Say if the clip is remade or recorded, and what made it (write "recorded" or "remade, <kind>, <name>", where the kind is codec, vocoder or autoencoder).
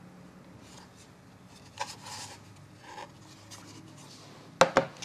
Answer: recorded